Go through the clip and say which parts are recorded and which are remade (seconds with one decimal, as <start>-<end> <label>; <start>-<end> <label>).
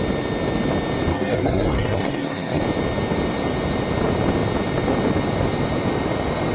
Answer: 0.0-1.1 recorded; 1.1-2.6 remade; 2.6-6.5 recorded